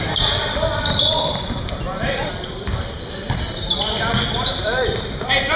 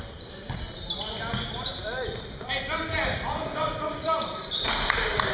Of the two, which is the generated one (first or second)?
first